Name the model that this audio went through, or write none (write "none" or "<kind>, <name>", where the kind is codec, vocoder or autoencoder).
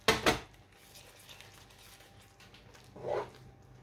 none